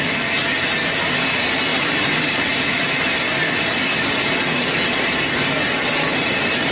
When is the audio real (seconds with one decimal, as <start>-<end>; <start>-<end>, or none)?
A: 0.0-1.7; 3.8-6.7